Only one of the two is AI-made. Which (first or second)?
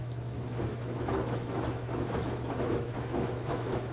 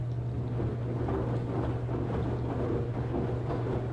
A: first